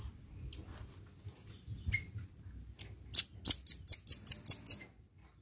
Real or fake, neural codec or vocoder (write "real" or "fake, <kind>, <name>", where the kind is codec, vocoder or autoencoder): real